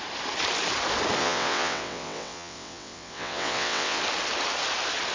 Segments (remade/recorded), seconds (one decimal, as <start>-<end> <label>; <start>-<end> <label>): 0.0-1.2 recorded; 1.2-4.0 remade; 4.0-5.1 recorded